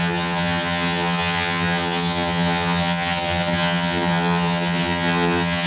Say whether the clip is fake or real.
fake